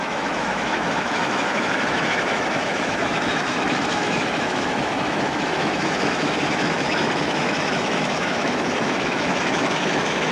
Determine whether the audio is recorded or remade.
remade